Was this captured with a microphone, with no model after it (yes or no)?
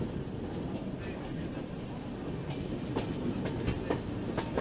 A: yes